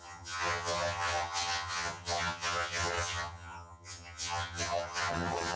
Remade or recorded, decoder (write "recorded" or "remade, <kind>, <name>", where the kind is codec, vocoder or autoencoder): remade, vocoder, HiFi-GAN